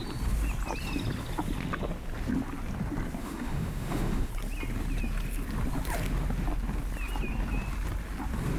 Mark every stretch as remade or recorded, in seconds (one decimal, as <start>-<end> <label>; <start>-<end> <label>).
0.0-3.2 recorded; 3.2-4.3 remade; 4.3-8.6 recorded